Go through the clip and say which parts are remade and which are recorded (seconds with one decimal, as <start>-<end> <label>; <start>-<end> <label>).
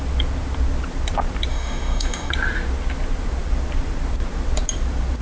0.0-1.5 recorded; 1.5-2.3 remade; 2.3-5.2 recorded